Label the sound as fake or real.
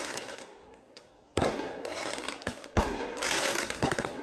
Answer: fake